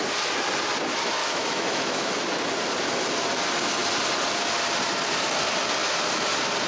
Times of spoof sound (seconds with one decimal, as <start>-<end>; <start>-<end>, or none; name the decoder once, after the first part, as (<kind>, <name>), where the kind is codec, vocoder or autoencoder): 1.2-2.1 (autoencoder, DAC-VAE)